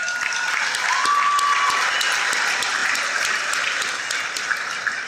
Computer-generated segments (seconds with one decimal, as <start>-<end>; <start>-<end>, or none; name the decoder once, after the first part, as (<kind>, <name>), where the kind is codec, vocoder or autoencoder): none